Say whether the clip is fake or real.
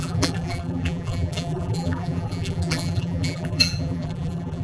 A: fake